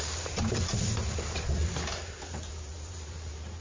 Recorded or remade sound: remade